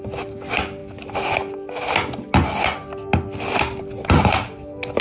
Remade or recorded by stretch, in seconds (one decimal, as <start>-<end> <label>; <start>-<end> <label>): 0.0-5.0 recorded